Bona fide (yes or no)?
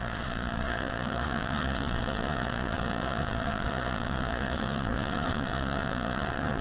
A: no